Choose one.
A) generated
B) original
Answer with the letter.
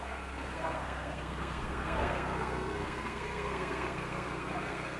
A